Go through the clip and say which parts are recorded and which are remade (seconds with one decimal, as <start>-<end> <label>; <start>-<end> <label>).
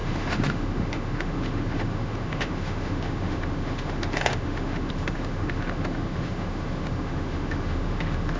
0.0-8.4 remade